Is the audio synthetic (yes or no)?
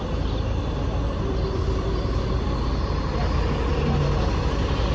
no